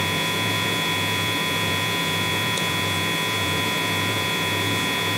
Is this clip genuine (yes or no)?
no